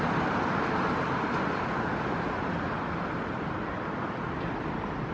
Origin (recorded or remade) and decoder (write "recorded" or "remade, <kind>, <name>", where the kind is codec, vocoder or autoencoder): recorded